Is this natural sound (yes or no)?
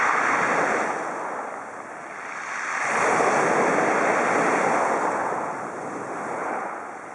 yes